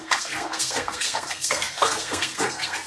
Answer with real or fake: fake